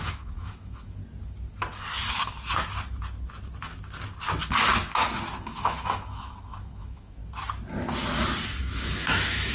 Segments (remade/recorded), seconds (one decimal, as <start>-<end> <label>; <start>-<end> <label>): 0.0-1.0 remade; 1.0-5.4 recorded; 5.4-7.2 remade; 7.2-8.6 recorded; 8.6-9.5 remade